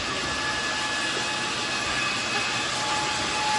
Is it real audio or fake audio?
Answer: real